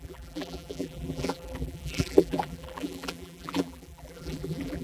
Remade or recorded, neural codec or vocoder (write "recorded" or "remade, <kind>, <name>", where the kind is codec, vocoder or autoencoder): remade, vocoder, BigVGAN v2